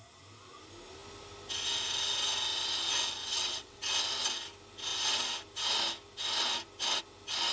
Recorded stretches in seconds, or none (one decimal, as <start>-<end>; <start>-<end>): 0.0-3.2; 3.8-7.5